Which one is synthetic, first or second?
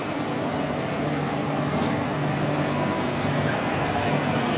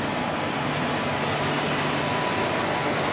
first